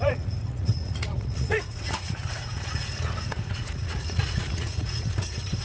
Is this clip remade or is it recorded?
remade